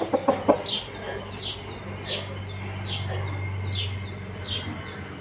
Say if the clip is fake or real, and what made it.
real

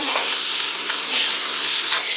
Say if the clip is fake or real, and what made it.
fake, codec, SNAC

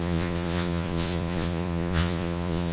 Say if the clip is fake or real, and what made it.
fake, vocoder, Vocos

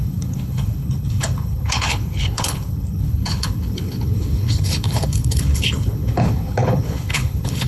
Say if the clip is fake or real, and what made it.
fake, codec, HILCodec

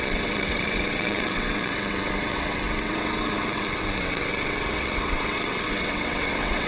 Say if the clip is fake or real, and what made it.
fake, vocoder, WaveNeXt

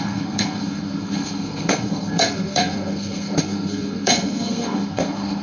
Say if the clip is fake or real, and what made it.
fake, codec, SNAC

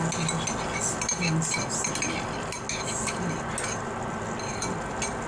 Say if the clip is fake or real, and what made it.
real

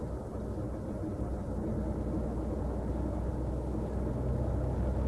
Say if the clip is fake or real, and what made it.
real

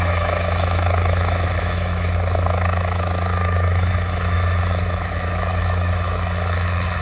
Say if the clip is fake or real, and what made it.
fake, autoencoder, DAC-VAE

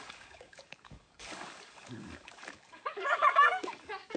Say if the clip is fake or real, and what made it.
fake, codec, DAC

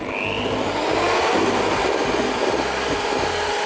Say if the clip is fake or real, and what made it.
real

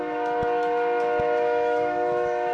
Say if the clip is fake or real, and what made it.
fake, autoencoder, DAC-VAE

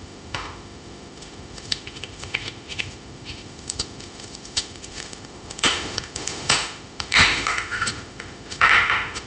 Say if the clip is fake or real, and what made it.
fake, autoencoder, DAC-VAE